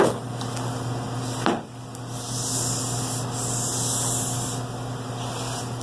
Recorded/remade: recorded